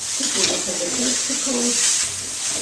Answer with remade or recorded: recorded